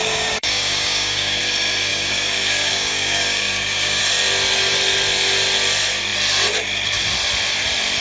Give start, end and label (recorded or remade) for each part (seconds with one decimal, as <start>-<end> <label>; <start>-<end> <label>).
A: 0.0-1.4 remade; 1.4-1.9 recorded; 1.9-4.0 remade; 4.0-8.0 recorded